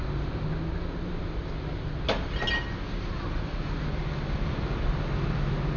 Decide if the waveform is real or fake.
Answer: real